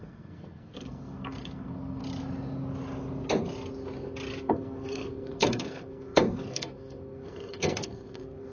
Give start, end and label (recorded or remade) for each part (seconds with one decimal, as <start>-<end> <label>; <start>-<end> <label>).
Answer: 0.0-2.0 remade; 2.0-4.4 recorded; 4.4-8.5 remade